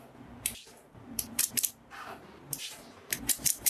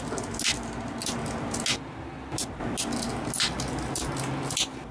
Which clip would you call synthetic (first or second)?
first